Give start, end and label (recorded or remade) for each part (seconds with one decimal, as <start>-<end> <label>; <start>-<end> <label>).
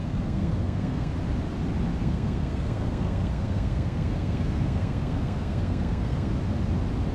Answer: 0.0-1.1 remade; 1.1-2.0 recorded; 2.0-6.3 remade; 6.3-7.1 recorded